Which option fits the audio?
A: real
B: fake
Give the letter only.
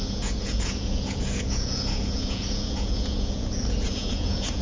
B